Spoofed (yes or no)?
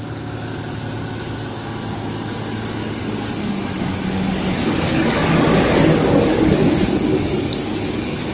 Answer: yes